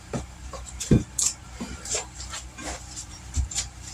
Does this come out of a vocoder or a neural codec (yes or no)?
yes